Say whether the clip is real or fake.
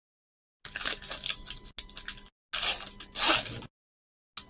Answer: real